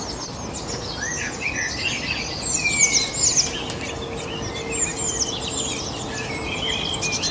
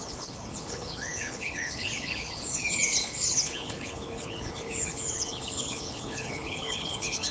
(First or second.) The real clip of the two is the first